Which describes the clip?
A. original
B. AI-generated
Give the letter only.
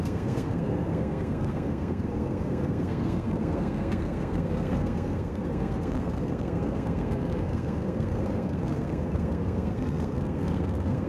B